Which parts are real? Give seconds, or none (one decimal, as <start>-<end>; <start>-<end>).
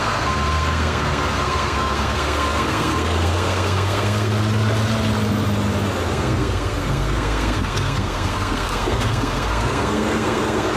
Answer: 4.3-6.1